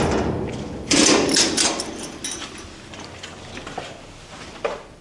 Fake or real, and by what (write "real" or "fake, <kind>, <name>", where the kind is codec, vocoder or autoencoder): real